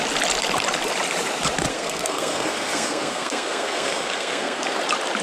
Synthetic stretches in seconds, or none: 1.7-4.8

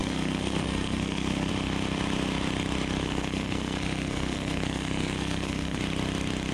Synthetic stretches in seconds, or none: 0.0-1.5; 3.0-5.8

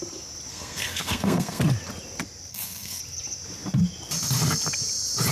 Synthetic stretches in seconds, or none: 0.5-1.6; 2.5-3.0

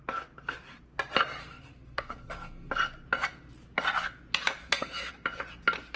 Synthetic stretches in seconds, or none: 1.4-2.7; 4.6-5.1

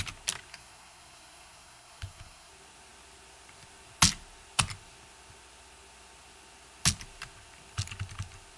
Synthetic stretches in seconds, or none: 0.5-2.5

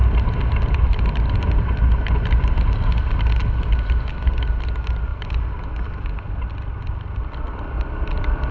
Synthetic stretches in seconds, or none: none

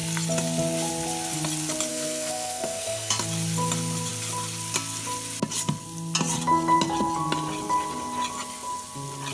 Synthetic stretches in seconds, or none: 1.9-3.1

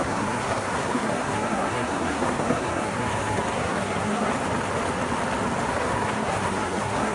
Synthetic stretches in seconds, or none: 0.0-4.3; 5.7-7.1